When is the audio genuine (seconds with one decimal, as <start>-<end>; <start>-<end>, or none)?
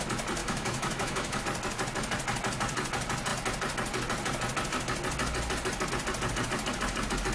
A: 0.0-0.4; 1.4-7.3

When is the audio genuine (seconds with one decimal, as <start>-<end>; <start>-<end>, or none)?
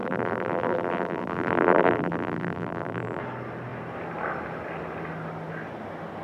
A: 3.2-6.2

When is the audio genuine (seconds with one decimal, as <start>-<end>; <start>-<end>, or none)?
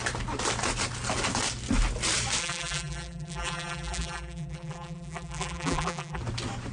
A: 0.0-2.4; 6.2-6.7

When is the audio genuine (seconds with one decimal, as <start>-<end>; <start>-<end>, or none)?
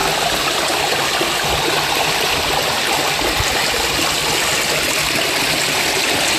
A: 0.0-6.4